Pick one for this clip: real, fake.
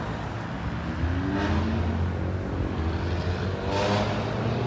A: real